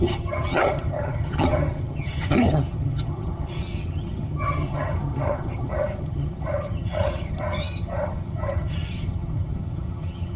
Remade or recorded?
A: remade